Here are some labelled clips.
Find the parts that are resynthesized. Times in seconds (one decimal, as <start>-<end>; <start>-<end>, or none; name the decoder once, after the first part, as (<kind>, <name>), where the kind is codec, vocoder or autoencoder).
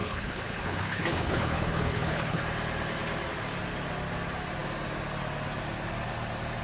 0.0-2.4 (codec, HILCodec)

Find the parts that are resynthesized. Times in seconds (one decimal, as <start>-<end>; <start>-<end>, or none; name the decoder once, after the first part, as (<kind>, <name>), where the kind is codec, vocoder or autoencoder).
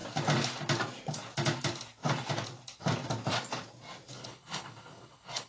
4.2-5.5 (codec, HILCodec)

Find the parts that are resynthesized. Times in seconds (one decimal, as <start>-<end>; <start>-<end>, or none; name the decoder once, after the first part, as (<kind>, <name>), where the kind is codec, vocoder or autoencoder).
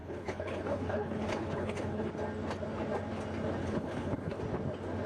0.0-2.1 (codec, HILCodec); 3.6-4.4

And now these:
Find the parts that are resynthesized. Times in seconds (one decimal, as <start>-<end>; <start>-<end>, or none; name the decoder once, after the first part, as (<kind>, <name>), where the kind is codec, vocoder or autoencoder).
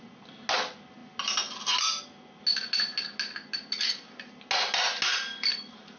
none